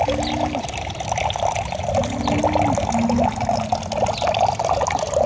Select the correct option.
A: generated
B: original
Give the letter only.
B